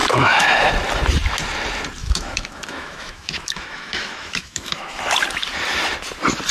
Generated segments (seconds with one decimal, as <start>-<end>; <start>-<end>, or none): 0.0-0.7; 2.0-5.0